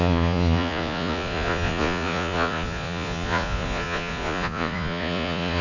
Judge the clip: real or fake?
fake